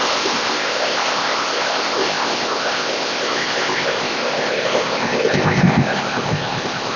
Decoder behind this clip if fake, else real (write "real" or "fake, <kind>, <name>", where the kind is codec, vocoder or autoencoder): fake, codec, ZipCodec